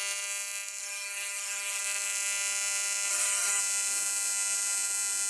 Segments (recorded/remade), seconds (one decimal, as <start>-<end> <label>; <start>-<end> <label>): 0.0-0.8 recorded; 0.8-1.8 remade; 1.8-3.1 recorded; 3.1-3.6 remade; 3.6-5.3 recorded